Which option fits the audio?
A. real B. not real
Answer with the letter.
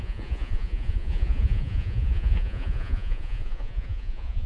B